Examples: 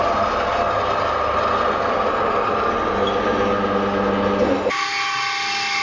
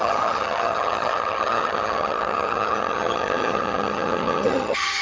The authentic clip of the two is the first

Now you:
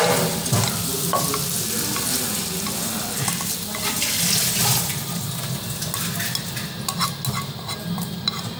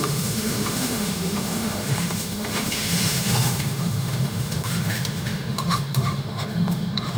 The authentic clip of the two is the first